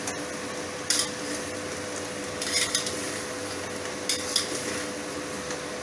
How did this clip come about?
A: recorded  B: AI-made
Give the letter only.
A